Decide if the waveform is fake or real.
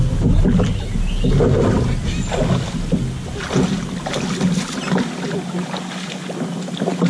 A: real